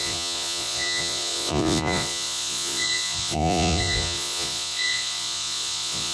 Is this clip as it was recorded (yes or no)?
no